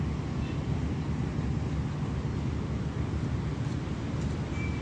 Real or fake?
real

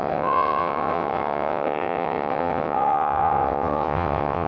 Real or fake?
fake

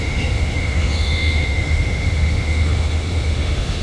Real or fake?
fake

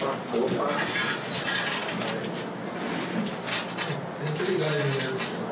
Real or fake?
real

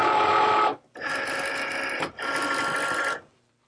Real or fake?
fake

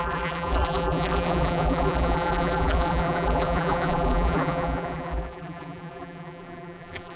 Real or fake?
fake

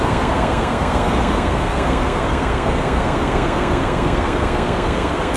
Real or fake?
fake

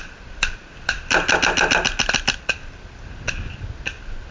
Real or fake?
real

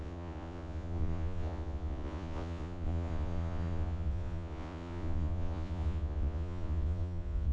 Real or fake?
fake